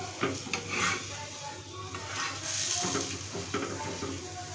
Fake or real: real